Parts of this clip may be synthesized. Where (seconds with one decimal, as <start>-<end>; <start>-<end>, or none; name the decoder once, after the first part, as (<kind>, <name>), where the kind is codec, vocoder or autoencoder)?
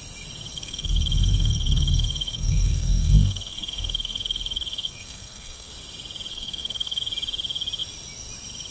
0.5-5.7 (codec, SNAC); 6.3-7.0